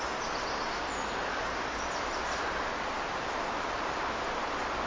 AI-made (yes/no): no